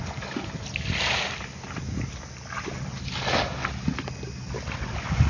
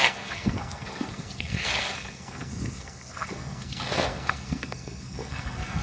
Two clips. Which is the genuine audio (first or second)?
first